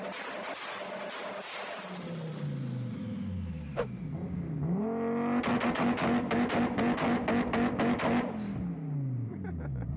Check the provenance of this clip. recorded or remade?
recorded